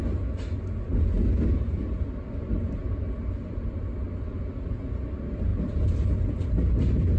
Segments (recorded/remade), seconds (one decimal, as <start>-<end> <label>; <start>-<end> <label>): 0.0-5.5 recorded; 5.5-6.3 remade; 6.3-7.2 recorded